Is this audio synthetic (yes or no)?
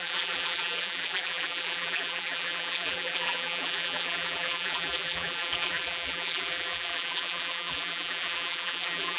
yes